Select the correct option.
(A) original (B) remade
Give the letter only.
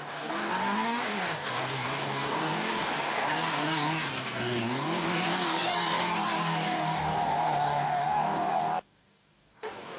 B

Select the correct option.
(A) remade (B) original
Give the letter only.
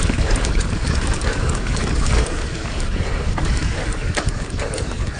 A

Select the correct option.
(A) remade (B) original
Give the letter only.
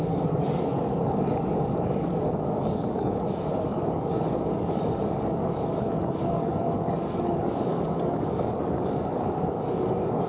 A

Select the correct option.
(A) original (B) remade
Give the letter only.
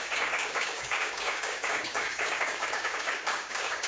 B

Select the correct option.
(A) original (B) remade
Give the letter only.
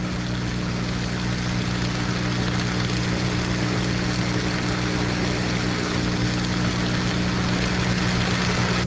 A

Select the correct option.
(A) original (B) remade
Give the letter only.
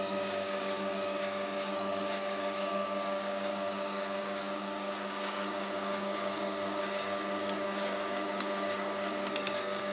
B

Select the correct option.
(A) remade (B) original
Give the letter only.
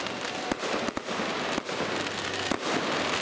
B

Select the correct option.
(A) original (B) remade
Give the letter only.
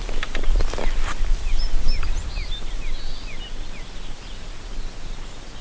A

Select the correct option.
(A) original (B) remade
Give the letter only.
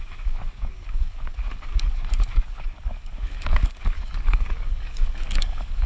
B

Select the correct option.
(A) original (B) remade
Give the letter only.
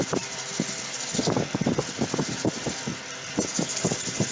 A